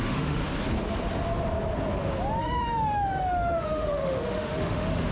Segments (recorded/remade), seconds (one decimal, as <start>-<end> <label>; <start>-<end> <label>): 0.0-0.4 remade; 0.4-2.4 recorded; 2.4-5.1 remade